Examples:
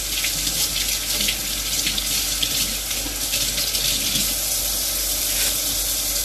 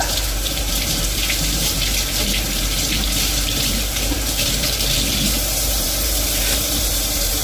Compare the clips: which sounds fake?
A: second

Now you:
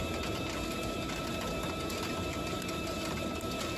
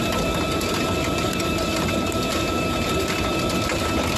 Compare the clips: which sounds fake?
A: second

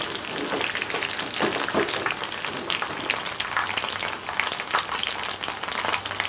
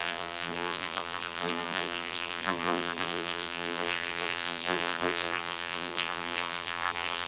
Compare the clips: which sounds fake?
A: second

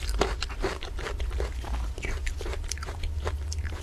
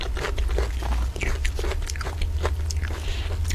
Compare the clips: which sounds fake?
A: first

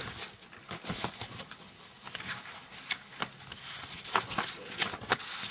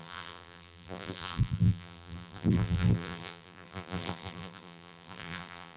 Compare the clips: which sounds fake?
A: second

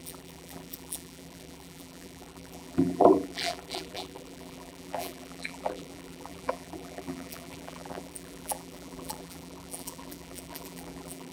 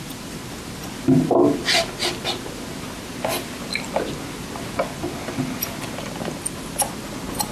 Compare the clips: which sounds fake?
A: first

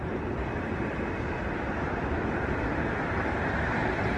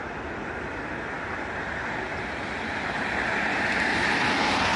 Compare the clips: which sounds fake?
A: first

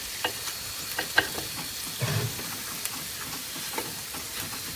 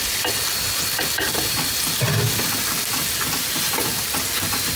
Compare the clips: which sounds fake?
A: first